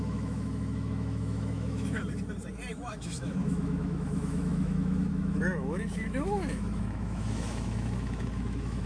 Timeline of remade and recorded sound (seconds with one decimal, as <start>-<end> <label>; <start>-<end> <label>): 0.0-2.0 remade; 2.0-2.7 recorded; 2.7-8.9 remade